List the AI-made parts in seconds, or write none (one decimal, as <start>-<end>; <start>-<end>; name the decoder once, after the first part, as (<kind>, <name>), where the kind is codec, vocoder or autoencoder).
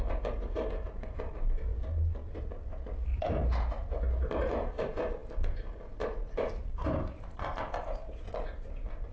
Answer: 3.1-4.7 (vocoder, BigVGAN v2)